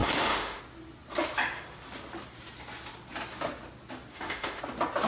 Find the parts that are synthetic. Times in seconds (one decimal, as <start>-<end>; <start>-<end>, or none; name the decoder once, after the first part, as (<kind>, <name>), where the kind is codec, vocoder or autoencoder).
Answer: 0.0-0.6 (autoencoder, DAC-VAE); 4.1-4.6